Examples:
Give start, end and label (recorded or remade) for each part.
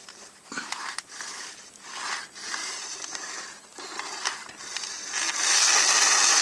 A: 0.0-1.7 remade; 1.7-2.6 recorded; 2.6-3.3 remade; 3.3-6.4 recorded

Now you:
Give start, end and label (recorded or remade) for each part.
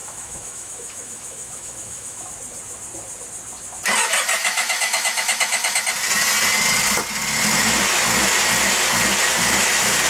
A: 0.0-2.3 remade; 2.3-4.4 recorded; 4.4-5.8 remade; 5.8-10.1 recorded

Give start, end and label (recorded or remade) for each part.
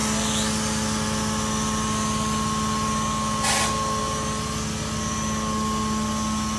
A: 0.0-6.6 recorded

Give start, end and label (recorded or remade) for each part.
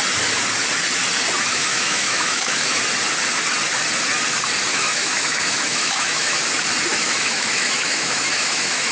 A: 0.0-1.5 recorded; 1.5-2.8 remade; 2.8-4.7 recorded; 4.7-6.5 remade; 6.5-6.9 recorded; 6.9-8.9 remade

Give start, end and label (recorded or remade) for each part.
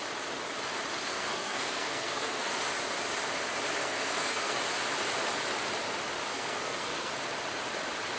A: 0.0-1.1 recorded; 1.1-2.5 remade; 2.5-3.8 recorded; 3.8-4.6 remade; 4.6-6.3 recorded; 6.3-7.1 remade; 7.1-8.2 recorded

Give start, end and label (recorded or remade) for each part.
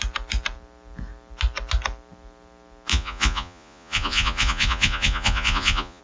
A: 0.0-2.9 recorded; 2.9-6.0 remade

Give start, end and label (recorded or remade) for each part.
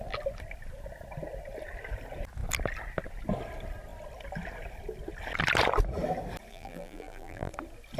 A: 0.0-6.5 recorded; 6.5-7.5 remade; 7.5-8.0 recorded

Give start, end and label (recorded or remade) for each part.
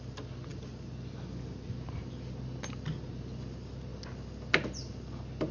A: 0.0-5.5 recorded